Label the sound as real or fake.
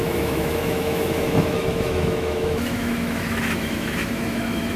fake